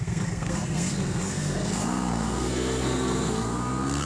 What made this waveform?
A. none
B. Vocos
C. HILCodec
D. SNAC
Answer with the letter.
D